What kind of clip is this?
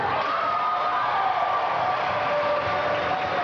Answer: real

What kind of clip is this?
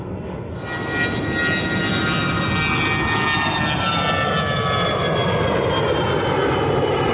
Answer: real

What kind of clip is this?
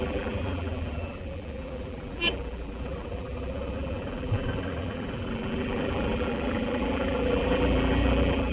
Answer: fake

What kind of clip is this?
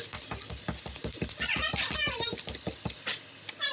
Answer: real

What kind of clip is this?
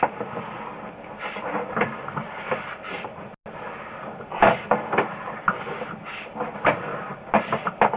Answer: real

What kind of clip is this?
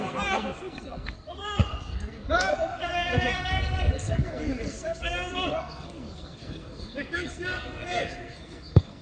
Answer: fake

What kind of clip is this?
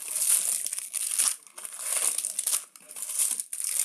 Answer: real